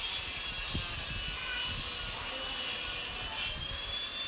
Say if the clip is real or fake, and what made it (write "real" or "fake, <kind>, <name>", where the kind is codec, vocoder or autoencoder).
real